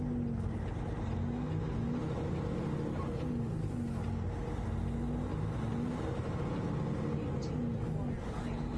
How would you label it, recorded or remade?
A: recorded